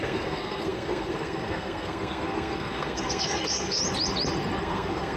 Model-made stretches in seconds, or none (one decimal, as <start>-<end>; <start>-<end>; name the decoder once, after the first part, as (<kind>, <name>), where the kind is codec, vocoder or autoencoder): 0.0-3.8 (codec, SNAC); 4.6-5.2